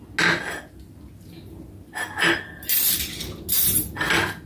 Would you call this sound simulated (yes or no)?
no